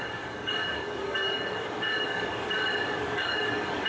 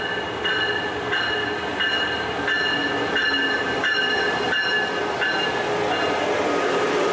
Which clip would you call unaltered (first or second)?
second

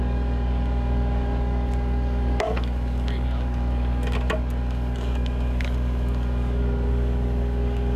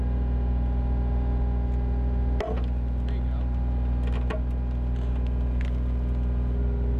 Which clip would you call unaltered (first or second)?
second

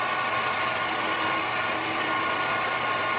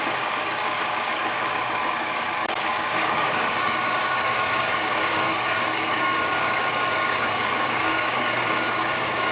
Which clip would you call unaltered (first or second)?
first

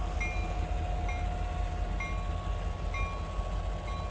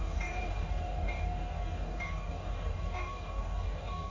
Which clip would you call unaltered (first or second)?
first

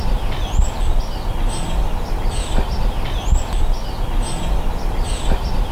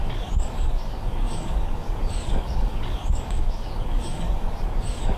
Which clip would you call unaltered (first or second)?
first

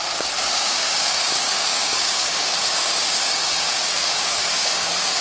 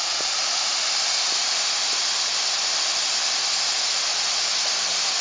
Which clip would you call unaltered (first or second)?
second